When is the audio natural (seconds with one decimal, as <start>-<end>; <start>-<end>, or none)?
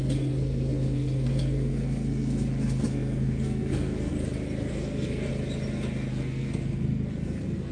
4.1-4.7; 5.3-6.1